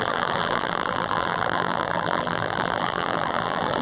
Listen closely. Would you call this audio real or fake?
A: fake